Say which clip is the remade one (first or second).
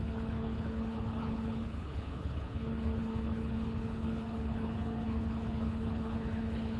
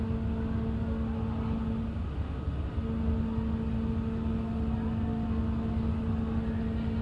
first